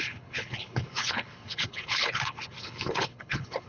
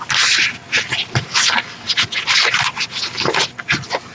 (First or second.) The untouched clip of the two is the second